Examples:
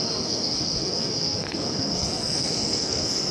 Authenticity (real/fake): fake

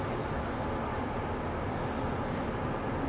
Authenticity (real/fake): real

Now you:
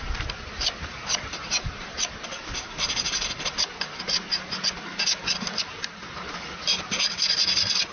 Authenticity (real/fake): real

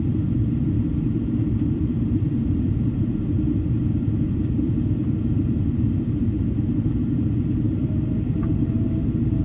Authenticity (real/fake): fake